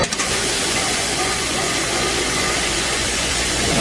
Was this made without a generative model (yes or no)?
no